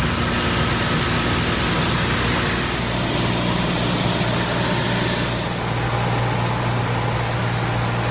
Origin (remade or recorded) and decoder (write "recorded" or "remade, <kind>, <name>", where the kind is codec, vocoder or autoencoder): recorded